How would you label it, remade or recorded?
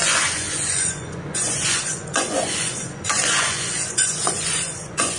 remade